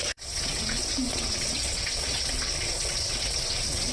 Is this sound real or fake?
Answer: fake